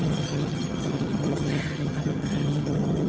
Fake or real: fake